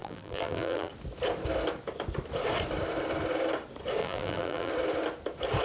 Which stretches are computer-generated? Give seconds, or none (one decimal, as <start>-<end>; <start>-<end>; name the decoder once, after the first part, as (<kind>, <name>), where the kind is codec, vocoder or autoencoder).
0.0-0.9 (vocoder, BigVGAN v2); 4.0-4.7